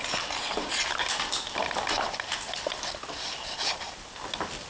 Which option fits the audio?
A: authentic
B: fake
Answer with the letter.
A